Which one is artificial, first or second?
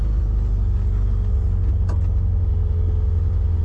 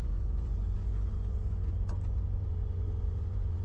second